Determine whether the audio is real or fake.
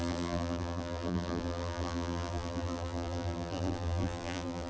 fake